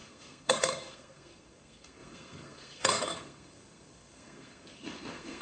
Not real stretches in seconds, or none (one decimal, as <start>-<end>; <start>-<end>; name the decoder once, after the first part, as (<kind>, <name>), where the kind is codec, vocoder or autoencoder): 0.0-5.4 (codec, SNAC)

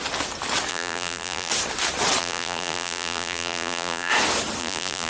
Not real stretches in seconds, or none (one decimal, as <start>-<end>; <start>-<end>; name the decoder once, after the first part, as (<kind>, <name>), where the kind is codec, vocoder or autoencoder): 0.7-1.5 (vocoder, BigVGAN v2); 2.2-4.1; 4.6-5.1